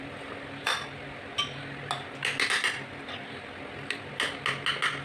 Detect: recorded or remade recorded